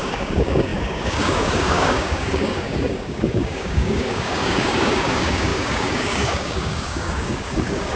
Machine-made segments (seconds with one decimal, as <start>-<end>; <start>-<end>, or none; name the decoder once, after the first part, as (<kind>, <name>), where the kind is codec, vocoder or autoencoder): 0.0-8.0 (codec, DAC)